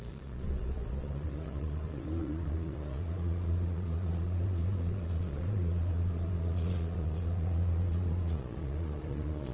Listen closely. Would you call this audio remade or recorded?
remade